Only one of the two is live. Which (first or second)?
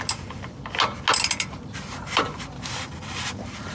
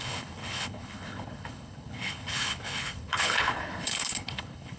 first